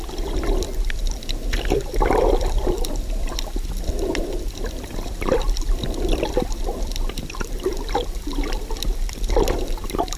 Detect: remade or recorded remade